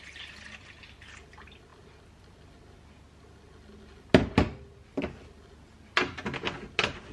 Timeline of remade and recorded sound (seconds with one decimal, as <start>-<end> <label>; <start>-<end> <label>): 0.0-7.1 recorded